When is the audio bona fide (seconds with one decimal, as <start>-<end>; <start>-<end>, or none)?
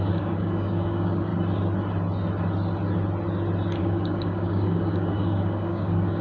1.3-3.8